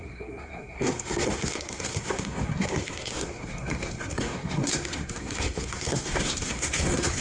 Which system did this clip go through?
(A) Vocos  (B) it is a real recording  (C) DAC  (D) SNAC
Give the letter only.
D